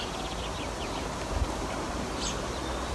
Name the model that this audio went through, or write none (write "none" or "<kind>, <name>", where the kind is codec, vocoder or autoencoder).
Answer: none